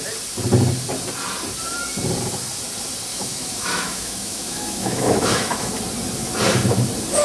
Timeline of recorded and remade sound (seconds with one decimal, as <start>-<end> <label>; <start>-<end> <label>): 0.0-3.1 recorded; 3.1-5.7 remade; 5.7-7.2 recorded